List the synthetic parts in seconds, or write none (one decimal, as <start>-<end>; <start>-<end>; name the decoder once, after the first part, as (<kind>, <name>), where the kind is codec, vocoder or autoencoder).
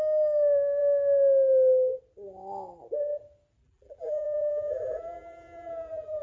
3.6-6.2 (vocoder, BigVGAN v2)